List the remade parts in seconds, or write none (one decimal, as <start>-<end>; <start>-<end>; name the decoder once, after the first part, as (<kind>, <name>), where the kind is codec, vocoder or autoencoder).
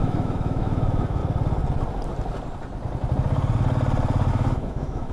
0.0-1.2 (autoencoder, DAC-VAE); 4.3-5.1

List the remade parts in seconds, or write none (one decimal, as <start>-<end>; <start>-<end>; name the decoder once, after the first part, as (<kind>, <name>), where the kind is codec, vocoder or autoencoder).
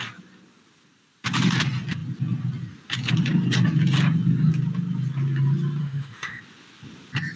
5.8-6.4 (autoencoder, DAC-VAE)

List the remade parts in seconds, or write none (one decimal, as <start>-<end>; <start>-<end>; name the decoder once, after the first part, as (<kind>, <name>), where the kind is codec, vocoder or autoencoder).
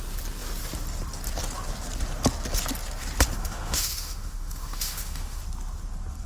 3.4-5.4 (autoencoder, DAC-VAE)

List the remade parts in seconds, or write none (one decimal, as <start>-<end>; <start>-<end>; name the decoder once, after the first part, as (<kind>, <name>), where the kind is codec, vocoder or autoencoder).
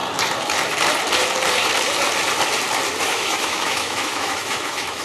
3.0-5.0 (autoencoder, DAC-VAE)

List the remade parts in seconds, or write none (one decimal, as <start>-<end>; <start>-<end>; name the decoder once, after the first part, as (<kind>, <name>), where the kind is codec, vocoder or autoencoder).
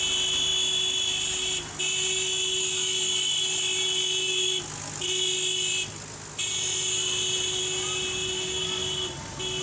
none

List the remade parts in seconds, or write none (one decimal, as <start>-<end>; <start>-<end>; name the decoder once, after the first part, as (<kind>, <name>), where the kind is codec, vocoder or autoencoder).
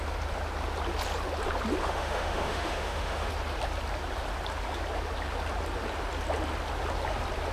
1.8-3.3 (autoencoder, DAC-VAE)